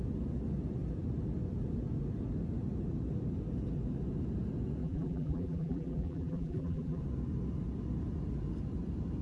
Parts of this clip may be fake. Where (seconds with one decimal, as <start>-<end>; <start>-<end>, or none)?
4.8-7.0

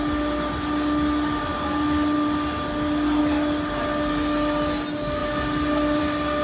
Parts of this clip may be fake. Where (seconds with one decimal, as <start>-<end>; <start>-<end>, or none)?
none

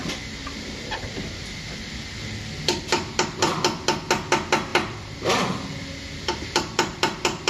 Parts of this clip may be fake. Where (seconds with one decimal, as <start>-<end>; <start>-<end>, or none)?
0.4-3.6; 4.7-7.5

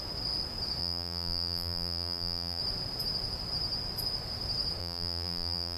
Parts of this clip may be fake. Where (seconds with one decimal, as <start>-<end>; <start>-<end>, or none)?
0.8-2.6; 4.8-5.8

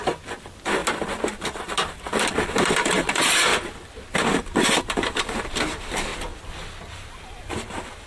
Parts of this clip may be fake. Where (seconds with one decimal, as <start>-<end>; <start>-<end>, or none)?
0.0-0.8; 2.3-3.5; 4.8-6.1; 6.8-8.1

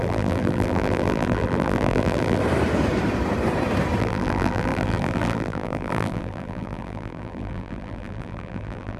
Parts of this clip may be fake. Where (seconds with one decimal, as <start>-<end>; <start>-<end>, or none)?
0.0-2.4; 4.0-9.0